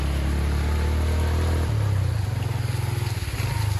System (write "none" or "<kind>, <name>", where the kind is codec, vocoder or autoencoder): none